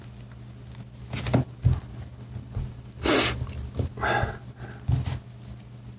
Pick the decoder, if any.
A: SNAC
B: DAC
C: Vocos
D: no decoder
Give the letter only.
D